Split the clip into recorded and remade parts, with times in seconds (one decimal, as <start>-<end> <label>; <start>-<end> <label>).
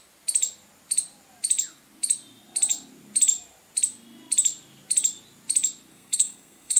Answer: 0.0-5.9 recorded; 5.9-6.8 remade